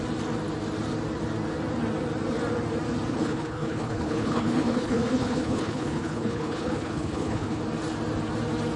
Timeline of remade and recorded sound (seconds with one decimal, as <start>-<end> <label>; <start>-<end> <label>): 0.0-3.1 recorded; 3.1-7.6 remade; 7.6-8.8 recorded